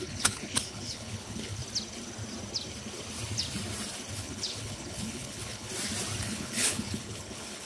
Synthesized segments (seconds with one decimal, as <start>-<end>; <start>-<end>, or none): 0.0-1.6; 4.1-5.7; 6.2-7.7